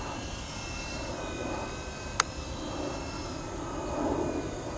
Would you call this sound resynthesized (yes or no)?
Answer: no